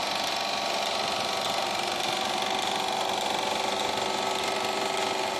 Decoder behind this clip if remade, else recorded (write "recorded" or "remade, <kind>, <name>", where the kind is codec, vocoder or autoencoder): recorded